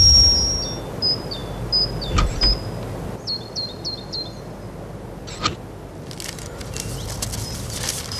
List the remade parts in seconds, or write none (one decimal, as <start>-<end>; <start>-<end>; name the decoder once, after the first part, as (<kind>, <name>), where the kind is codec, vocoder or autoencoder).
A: none